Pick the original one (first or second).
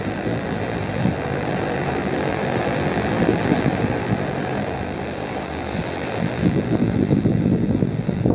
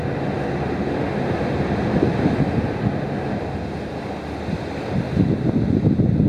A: second